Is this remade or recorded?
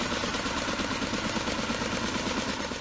recorded